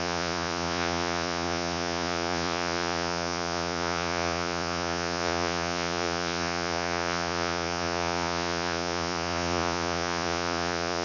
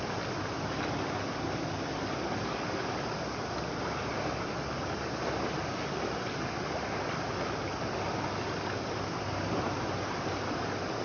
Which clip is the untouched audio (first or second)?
second